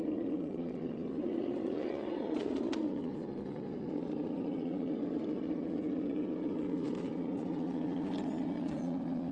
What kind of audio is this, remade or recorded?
remade